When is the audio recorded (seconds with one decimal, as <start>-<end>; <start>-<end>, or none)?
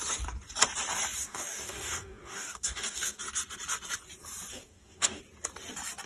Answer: 0.0-1.2; 3.2-4.5; 5.2-6.1